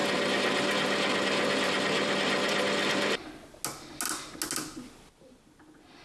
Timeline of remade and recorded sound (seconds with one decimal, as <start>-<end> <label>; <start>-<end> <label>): 0.0-3.6 remade; 3.6-6.0 recorded